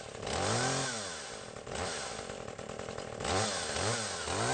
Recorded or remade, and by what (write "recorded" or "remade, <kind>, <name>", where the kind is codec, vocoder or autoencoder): recorded